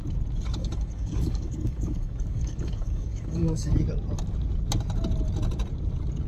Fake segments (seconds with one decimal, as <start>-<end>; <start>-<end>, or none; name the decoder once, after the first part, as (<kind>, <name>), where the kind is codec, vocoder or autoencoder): 0.6-3.7 (codec, DAC)